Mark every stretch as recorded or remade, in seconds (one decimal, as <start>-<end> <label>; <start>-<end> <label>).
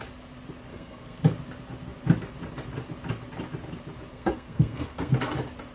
0.0-0.7 recorded; 0.7-1.2 remade; 1.2-4.1 recorded; 4.1-5.1 remade; 5.1-5.7 recorded